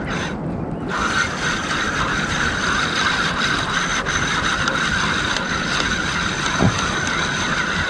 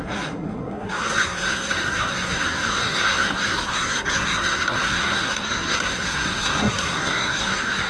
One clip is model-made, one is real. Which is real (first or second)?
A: first